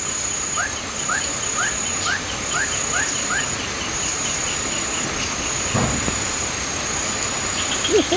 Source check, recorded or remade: recorded